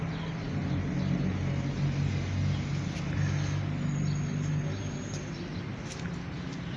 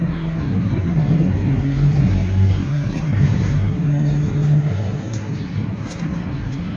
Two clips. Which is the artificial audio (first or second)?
second